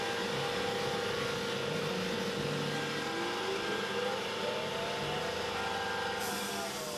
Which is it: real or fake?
real